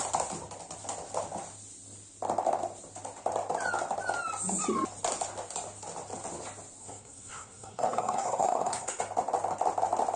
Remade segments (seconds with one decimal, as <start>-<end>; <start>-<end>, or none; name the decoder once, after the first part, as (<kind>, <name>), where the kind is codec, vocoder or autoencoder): 6.8-9.0 (codec, SNAC)